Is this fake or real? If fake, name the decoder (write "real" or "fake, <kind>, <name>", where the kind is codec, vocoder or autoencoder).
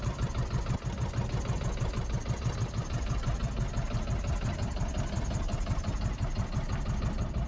real